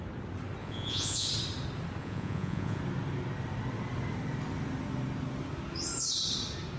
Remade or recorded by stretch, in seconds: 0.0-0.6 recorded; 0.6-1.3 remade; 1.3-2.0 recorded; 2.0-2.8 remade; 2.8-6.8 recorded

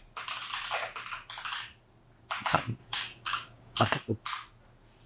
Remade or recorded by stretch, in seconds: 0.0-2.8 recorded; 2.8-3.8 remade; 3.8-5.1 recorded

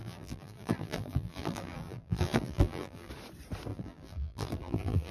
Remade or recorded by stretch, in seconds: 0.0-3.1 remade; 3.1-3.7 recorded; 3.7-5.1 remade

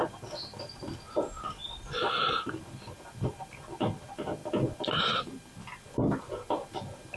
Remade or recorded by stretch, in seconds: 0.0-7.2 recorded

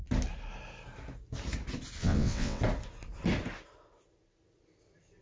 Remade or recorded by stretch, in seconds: 0.0-2.0 recorded; 2.0-2.6 remade; 2.6-5.2 recorded

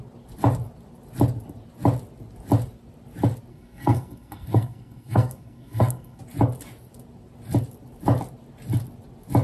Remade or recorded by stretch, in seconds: 0.0-3.5 recorded; 3.5-6.2 remade; 6.2-9.4 recorded

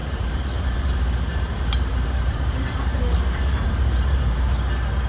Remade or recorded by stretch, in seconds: 0.0-0.9 remade; 0.9-1.3 recorded; 1.3-4.4 remade; 4.4-5.1 recorded